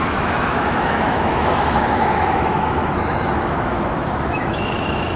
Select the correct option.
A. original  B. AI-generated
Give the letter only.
B